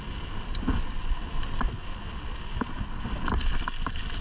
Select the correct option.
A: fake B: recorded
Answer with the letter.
B